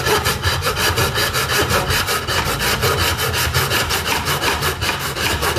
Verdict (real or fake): real